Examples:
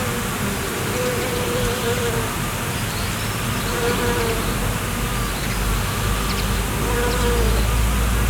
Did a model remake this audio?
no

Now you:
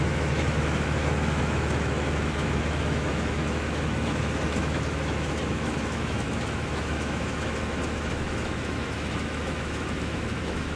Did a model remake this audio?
yes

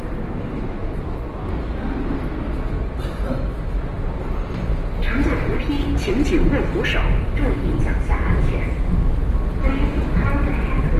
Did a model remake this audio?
no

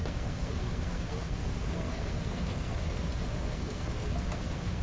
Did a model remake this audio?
yes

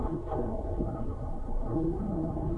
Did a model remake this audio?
yes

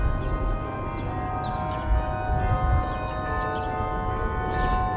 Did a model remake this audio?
no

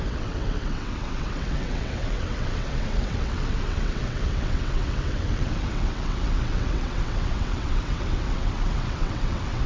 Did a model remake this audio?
yes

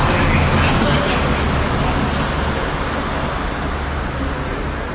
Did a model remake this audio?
no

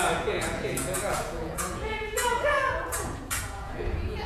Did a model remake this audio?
yes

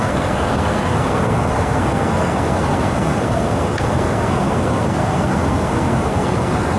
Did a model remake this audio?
yes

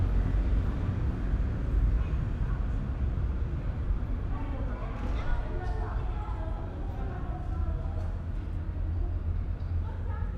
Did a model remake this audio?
no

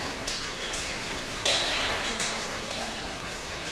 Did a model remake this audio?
yes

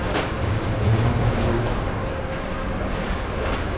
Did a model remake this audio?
yes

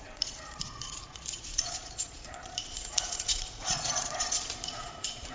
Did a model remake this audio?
yes